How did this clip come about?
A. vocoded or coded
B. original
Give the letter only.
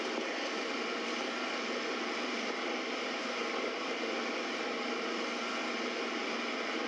A